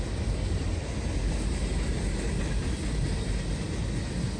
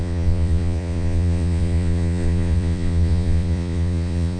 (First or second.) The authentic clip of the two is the first